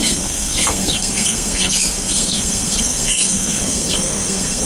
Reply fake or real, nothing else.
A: fake